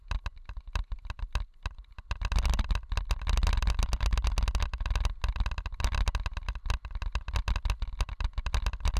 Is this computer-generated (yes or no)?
no